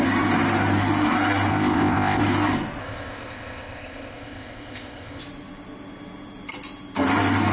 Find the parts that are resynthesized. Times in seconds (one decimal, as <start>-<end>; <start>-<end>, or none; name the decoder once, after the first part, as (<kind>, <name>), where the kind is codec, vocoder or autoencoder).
1.5-2.2 (codec, ZipCodec); 2.8-5.2